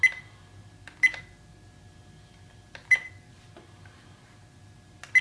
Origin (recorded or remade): recorded